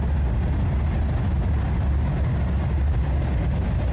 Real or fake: real